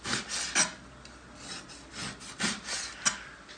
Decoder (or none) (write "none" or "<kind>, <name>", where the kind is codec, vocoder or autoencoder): none